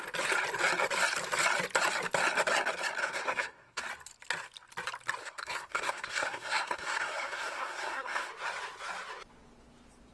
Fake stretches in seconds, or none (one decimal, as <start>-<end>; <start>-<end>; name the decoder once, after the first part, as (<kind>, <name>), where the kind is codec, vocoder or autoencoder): 3.0-3.8 (codec, SNAC); 5.2-8.3